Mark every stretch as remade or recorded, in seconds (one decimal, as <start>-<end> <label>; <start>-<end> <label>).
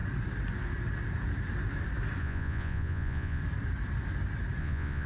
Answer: 0.0-2.2 recorded; 2.2-3.4 remade; 3.4-4.6 recorded; 4.6-5.1 remade